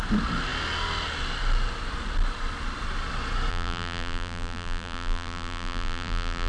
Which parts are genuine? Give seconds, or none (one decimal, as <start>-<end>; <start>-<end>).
0.0-3.5